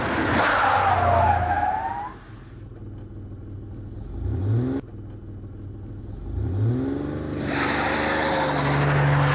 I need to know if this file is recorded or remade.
recorded